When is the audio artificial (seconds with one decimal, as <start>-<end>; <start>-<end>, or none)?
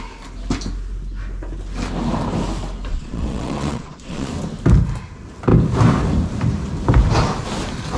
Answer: 2.9-4.3